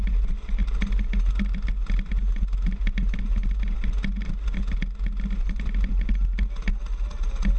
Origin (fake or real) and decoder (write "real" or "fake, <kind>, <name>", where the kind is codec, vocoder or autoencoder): real